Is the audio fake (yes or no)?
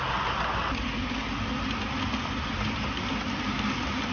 no